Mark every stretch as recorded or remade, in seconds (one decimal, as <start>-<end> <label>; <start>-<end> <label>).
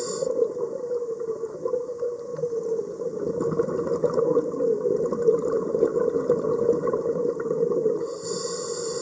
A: 0.0-9.0 recorded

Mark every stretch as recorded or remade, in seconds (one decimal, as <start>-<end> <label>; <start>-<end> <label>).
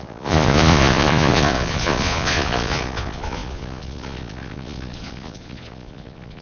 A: 0.0-6.4 remade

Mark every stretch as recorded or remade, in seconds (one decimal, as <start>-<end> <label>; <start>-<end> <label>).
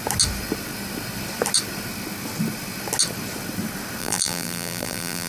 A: 0.0-4.0 recorded; 4.0-5.3 remade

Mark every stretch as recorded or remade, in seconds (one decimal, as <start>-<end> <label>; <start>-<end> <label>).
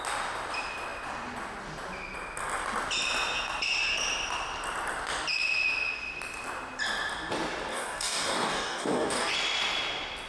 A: 0.0-7.7 recorded; 7.7-9.3 remade; 9.3-10.3 recorded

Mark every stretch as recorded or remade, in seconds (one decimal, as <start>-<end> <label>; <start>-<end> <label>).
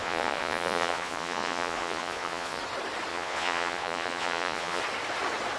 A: 0.0-2.6 remade; 2.6-3.1 recorded; 3.1-4.8 remade; 4.8-5.6 recorded